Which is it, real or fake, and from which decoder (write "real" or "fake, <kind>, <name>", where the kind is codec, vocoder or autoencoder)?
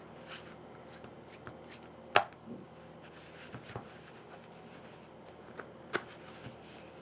real